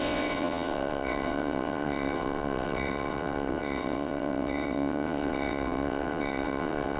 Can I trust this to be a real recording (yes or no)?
no